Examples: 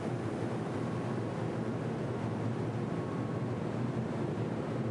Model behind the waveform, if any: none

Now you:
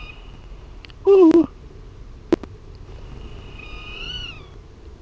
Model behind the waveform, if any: vocoder, BigVGAN v2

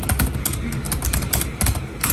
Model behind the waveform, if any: none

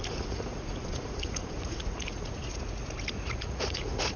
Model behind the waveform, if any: vocoder, Vocos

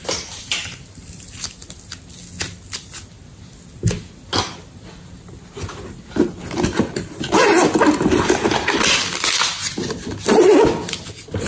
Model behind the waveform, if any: none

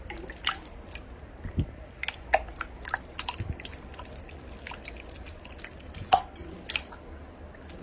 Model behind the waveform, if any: none